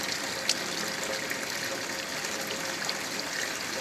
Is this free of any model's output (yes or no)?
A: yes